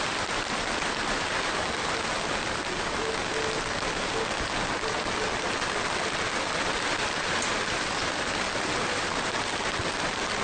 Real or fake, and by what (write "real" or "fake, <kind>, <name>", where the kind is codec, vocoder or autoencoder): real